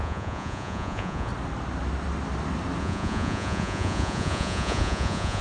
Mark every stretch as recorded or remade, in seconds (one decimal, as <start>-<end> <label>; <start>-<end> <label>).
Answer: 0.0-1.3 remade; 1.3-2.8 recorded; 2.8-5.4 remade